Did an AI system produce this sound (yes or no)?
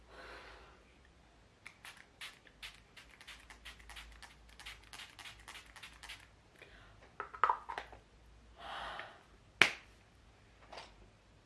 no